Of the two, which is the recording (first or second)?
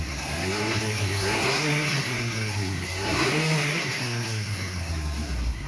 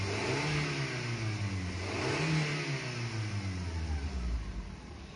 second